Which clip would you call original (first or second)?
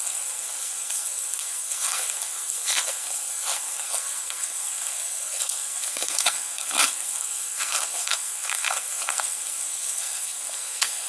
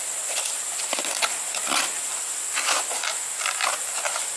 second